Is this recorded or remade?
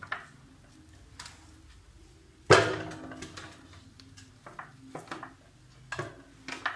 recorded